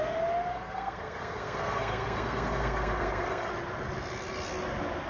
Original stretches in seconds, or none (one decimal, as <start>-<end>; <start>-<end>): 0.0-0.5; 3.5-5.1